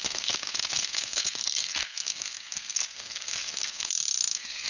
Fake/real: fake